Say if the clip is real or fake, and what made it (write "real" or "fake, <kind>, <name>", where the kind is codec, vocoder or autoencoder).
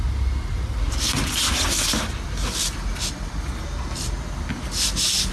real